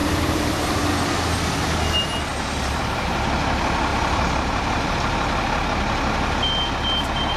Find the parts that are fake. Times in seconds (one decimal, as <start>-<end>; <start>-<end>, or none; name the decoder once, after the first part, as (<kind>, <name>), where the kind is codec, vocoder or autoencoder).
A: 0.0-0.9 (vocoder, BigVGAN v2); 2.3-2.8; 3.9-4.9